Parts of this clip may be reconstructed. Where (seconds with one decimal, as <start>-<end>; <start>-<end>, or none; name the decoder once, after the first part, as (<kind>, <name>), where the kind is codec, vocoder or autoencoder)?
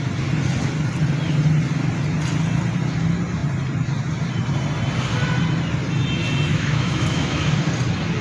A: 6.5-7.5 (autoencoder, DAC-VAE)